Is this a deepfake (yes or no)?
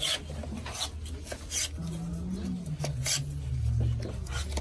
no